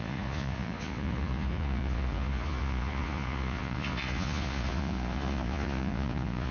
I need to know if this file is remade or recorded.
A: remade